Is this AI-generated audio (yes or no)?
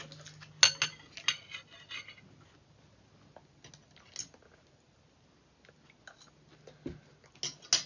no